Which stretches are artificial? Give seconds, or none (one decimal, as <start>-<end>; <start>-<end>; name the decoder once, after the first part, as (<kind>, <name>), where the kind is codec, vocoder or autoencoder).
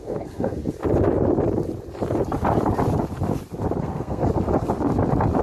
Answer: 0.0-0.6 (codec, SNAC); 3.8-4.2